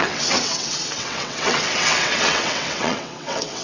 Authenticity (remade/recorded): remade